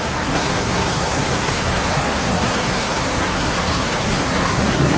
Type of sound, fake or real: fake